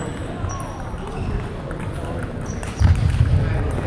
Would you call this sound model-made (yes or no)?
no